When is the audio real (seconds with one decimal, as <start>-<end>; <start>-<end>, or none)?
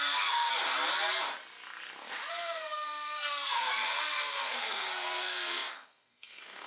0.5-2.3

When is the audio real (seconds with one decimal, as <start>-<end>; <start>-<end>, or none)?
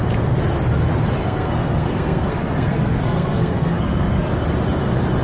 0.0-1.2; 4.3-5.2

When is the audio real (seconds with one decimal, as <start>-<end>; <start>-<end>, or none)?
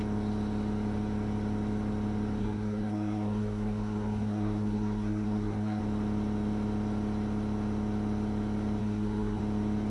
0.0-2.4; 5.8-8.8; 9.4-9.9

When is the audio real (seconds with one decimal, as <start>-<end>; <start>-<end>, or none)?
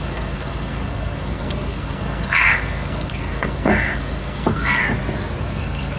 4.8-5.4